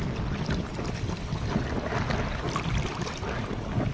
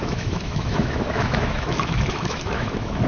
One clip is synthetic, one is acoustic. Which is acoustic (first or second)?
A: first